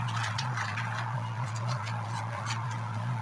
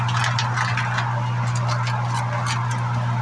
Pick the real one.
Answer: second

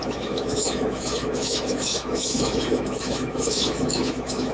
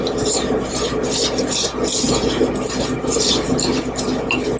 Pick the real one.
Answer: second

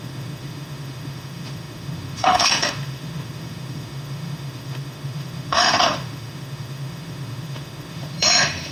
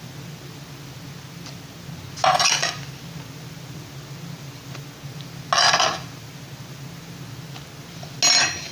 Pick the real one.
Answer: second